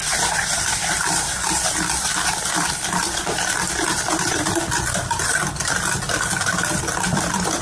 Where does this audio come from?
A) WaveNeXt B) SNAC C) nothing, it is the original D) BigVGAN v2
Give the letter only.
D